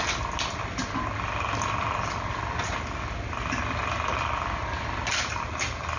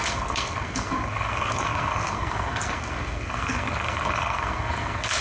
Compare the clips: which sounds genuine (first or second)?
first